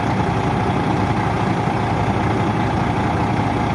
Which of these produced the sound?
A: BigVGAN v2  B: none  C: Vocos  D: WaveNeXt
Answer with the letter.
B